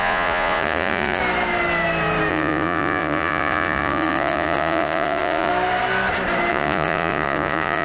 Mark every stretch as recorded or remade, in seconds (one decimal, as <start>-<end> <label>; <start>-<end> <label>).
0.0-1.2 remade; 1.2-2.3 recorded; 2.3-5.5 remade; 5.5-6.5 recorded; 6.5-7.8 remade